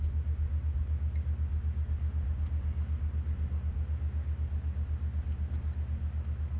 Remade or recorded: recorded